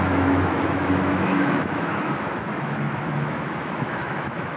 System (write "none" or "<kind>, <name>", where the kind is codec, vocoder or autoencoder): autoencoder, DAC-VAE